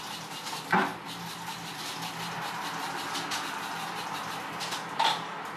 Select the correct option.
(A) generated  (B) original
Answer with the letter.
B